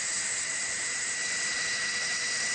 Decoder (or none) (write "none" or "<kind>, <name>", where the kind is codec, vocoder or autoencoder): none